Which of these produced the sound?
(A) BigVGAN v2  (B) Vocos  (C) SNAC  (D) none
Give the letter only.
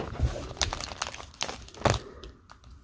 D